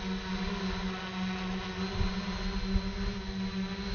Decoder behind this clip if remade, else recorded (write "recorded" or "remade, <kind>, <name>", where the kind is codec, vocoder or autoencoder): recorded